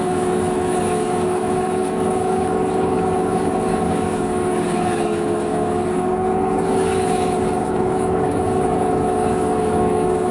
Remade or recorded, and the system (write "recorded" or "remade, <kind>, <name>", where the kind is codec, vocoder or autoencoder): remade, codec, DAC